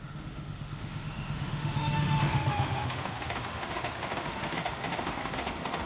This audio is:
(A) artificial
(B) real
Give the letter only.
A